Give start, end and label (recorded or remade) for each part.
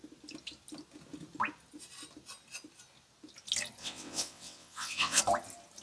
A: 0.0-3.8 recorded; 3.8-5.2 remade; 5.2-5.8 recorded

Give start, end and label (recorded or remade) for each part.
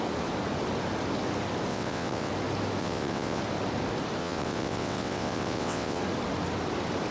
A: 0.0-1.7 recorded; 1.7-2.3 remade; 2.3-2.8 recorded; 2.8-3.4 remade; 3.4-4.2 recorded; 4.2-6.0 remade; 6.0-7.1 recorded